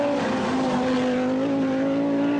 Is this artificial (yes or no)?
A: no